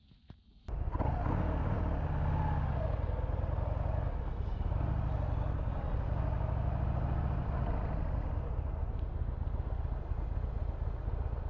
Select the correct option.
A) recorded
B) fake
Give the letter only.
A